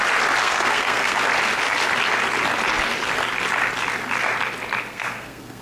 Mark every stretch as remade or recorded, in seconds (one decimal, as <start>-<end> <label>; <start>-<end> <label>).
0.0-0.4 recorded; 0.4-1.2 remade; 1.2-4.8 recorded; 4.8-5.6 remade